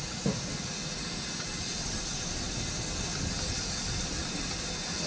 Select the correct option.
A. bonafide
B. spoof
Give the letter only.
A